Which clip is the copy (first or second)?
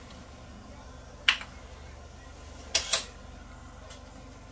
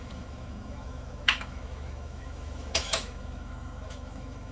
second